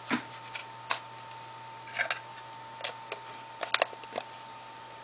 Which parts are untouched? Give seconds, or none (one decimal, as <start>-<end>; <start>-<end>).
0.0-5.0